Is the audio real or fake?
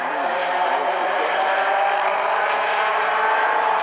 fake